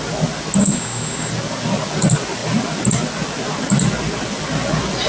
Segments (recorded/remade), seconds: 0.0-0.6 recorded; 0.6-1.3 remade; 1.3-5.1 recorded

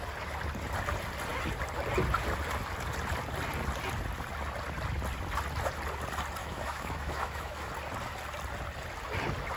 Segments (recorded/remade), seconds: 0.0-6.4 recorded; 6.4-7.7 remade; 7.7-9.6 recorded

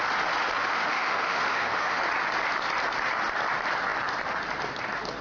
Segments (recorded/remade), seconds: 0.0-0.6 recorded; 0.6-2.0 remade; 2.0-5.2 recorded

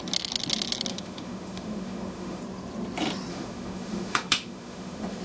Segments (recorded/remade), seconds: 0.0-0.9 recorded; 0.9-2.4 remade; 2.4-3.3 recorded; 3.3-5.2 remade

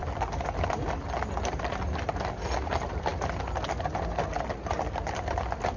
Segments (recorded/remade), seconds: 0.0-5.8 recorded

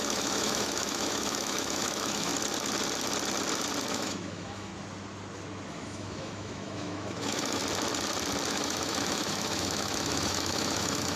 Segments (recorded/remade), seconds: 0.0-2.3 remade; 2.3-3.9 recorded; 3.9-4.7 remade; 4.7-5.7 recorded; 5.7-7.6 remade; 7.6-8.5 recorded; 8.5-11.2 remade

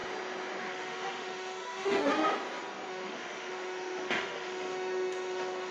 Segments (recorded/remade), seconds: 0.0-0.6 recorded; 0.6-2.3 remade; 2.3-2.9 recorded; 2.9-5.7 remade

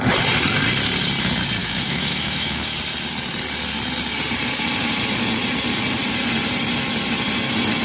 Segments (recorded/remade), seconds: 0.0-1.6 recorded; 1.6-2.8 remade; 2.8-7.8 recorded